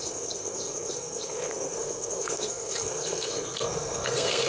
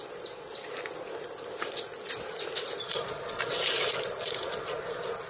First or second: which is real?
second